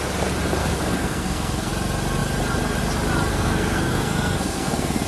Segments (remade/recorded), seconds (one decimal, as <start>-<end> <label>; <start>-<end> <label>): 0.0-0.6 recorded; 0.6-1.7 remade; 1.7-3.3 recorded; 3.3-5.1 remade